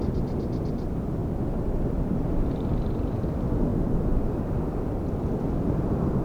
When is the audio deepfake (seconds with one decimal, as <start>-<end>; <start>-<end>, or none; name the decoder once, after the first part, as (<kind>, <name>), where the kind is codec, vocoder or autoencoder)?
1.2-3.2 (vocoder, BigVGAN v2)